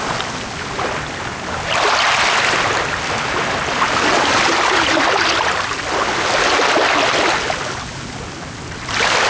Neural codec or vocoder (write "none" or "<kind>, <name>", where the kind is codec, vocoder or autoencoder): none